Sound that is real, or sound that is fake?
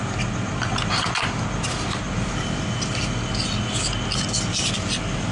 real